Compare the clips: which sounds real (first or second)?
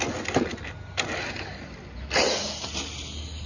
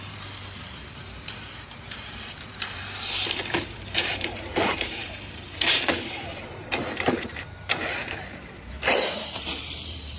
first